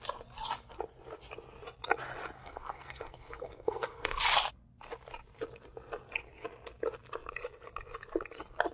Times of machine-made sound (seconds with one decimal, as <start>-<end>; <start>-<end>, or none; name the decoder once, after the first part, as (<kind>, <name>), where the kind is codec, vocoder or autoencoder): 2.4-4.2 (codec, SNAC)